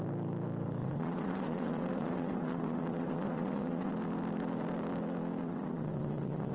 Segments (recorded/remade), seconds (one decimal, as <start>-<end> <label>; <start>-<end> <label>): 0.0-0.8 recorded; 0.8-3.9 remade; 3.9-5.4 recorded; 5.4-6.5 remade